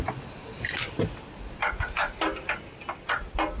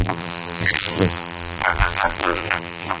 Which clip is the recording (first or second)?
first